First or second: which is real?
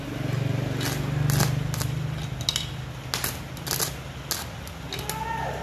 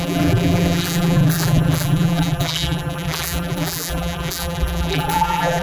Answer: first